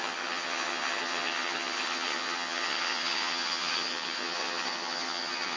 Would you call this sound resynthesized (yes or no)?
yes